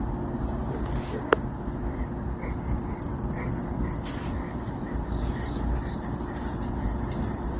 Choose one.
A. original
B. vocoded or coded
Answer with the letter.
A